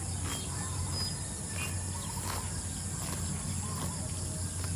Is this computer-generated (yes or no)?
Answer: no